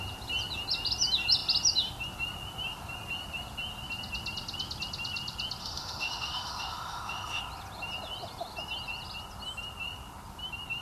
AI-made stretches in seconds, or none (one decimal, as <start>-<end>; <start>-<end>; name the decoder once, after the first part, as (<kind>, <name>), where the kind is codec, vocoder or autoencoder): 5.6-7.4 (autoencoder, DAC-VAE)